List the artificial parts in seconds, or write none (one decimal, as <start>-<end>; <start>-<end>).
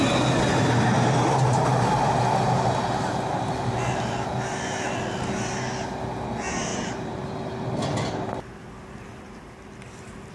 6.7-7.3